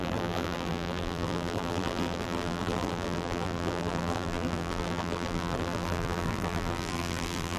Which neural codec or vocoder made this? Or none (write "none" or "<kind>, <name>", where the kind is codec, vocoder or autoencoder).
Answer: vocoder, BigVGAN v2